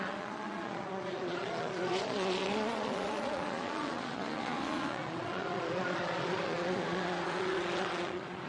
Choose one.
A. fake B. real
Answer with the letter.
A